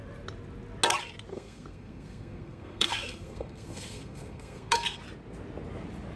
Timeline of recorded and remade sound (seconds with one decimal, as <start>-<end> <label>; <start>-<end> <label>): 0.0-1.3 recorded; 1.3-5.0 remade; 5.0-6.2 recorded